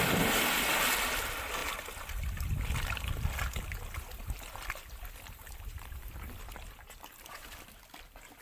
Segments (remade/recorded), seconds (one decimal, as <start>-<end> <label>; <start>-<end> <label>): 0.0-8.4 recorded